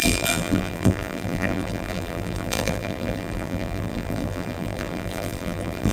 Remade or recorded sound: remade